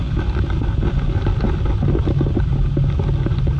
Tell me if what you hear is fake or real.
real